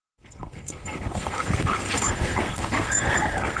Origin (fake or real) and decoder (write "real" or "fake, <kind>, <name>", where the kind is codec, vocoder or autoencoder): fake, codec, SNAC